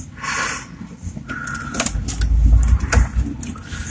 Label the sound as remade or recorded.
recorded